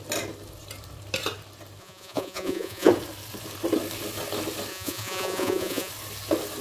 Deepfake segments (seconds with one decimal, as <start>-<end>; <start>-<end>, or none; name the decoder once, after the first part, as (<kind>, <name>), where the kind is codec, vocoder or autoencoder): 1.8-2.9 (vocoder, Vocos); 4.7-5.9